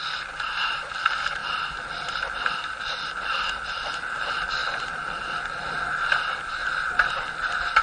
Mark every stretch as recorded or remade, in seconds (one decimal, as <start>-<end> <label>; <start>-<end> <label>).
0.0-6.6 remade; 6.6-7.1 recorded; 7.1-7.8 remade